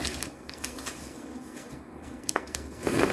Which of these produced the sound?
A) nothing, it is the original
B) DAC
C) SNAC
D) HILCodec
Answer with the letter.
C